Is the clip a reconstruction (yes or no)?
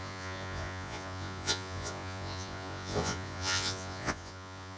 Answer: yes